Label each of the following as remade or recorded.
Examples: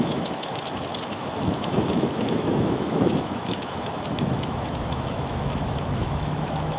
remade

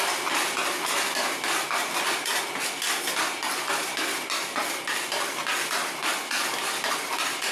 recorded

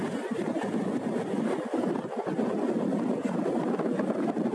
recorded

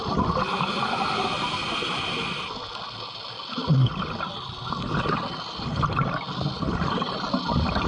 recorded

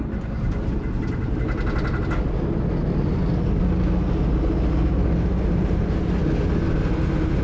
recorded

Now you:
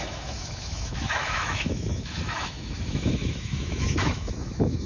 remade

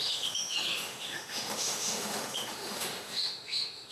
remade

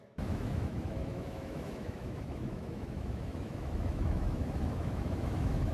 remade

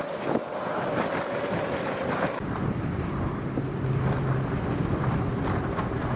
recorded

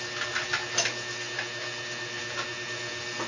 recorded